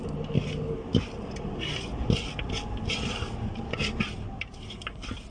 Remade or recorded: recorded